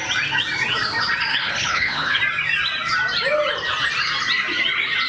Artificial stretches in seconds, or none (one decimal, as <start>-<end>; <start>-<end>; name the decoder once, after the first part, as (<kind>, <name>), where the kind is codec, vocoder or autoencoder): 1.3-2.2 (codec, HILCodec)